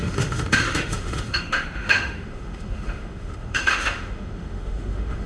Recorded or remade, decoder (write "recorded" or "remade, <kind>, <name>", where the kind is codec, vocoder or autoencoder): remade, autoencoder, DAC-VAE